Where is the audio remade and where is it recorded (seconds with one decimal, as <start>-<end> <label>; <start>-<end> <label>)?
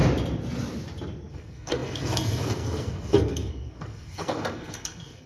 0.0-1.3 recorded; 1.3-5.3 remade